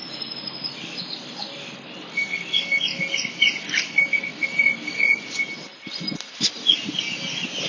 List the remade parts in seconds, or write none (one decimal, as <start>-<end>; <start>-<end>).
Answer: none